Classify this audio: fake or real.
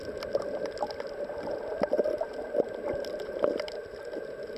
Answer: real